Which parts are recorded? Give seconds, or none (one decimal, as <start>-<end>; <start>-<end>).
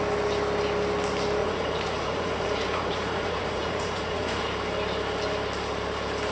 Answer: 0.0-1.4; 4.5-6.3